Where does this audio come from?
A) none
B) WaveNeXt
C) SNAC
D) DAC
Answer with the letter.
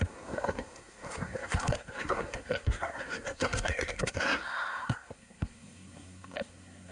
C